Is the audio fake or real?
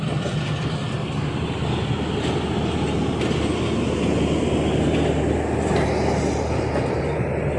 real